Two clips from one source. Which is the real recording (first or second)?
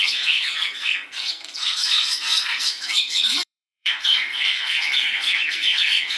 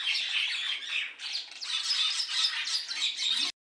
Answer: second